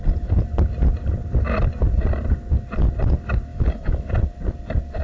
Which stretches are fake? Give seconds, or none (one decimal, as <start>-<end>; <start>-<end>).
3.5-4.1